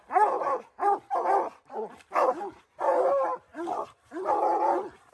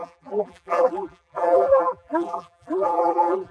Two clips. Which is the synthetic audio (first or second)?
second